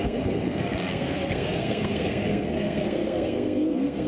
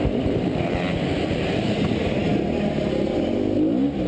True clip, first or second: second